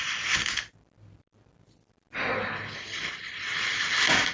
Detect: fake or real real